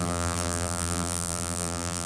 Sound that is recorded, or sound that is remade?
remade